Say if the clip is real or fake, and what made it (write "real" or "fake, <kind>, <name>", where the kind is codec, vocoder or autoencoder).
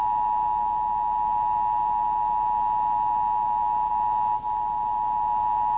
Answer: real